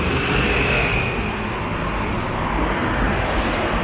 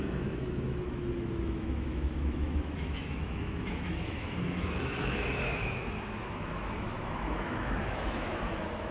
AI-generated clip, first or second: second